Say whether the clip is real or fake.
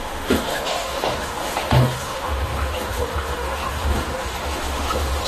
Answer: fake